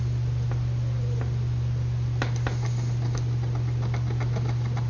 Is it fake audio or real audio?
real